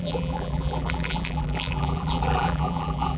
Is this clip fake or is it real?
fake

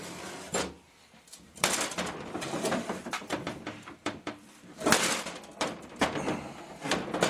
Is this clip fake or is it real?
fake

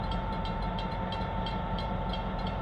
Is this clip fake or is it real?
fake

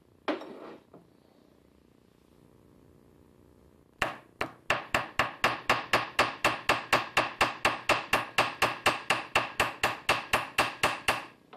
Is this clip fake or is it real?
real